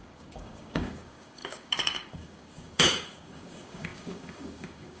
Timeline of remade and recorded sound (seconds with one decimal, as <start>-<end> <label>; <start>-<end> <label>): 0.0-5.0 remade